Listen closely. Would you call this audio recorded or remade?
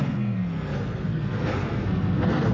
remade